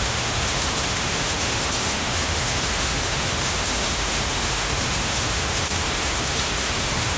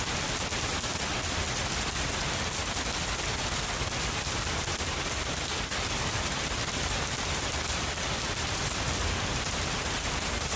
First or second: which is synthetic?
first